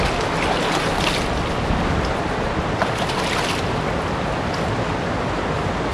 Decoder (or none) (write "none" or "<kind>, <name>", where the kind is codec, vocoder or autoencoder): none